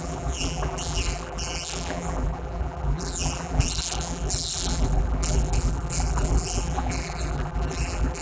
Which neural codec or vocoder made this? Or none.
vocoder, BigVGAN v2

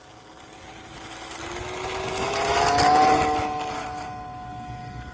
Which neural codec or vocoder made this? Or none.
none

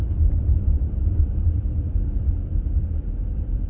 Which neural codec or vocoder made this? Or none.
vocoder, BigVGAN v2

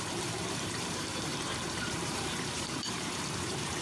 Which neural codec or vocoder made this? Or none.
vocoder, BigVGAN v2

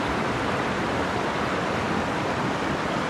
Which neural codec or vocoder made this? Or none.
vocoder, BigVGAN v2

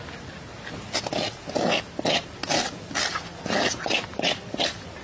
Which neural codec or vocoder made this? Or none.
none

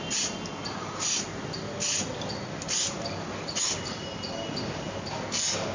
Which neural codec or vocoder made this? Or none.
none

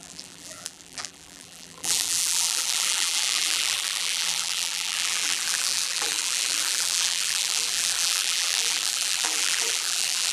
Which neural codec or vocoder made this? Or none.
vocoder, BigVGAN v2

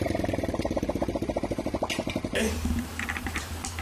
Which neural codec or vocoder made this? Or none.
vocoder, BigVGAN v2